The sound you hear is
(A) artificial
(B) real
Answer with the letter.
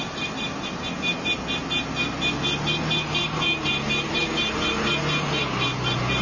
B